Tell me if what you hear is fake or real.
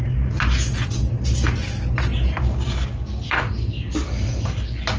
real